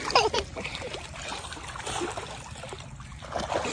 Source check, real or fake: real